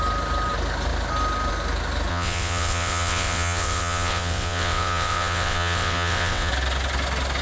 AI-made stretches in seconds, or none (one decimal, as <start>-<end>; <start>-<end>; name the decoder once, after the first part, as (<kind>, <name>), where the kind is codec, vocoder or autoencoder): 2.1-6.5 (vocoder, WaveNeXt)